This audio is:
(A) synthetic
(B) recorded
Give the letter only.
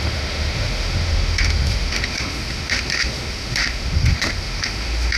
A